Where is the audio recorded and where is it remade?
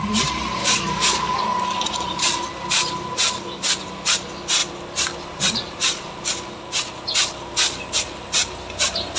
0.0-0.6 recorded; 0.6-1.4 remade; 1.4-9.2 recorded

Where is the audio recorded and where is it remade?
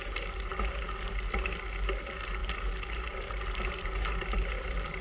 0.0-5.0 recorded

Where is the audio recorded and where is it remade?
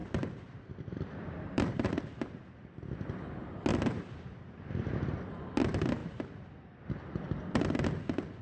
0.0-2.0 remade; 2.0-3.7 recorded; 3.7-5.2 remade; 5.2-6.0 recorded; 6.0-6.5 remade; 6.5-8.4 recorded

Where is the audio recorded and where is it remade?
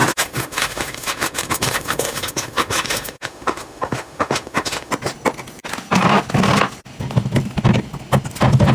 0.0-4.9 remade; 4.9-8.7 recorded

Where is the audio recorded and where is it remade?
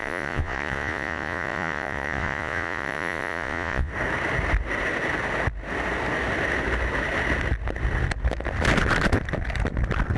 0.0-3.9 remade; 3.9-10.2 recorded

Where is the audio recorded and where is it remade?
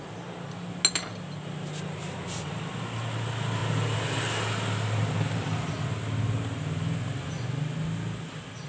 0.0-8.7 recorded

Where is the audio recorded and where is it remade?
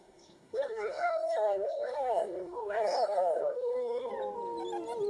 0.0-4.1 remade; 4.1-5.1 recorded